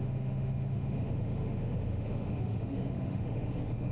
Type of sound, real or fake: fake